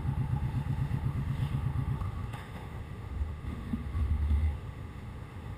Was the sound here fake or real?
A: fake